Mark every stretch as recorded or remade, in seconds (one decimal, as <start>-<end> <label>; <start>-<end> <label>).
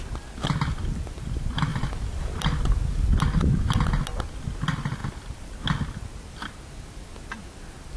0.0-8.0 recorded